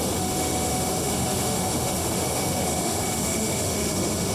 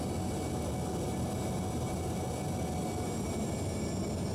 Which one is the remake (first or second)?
first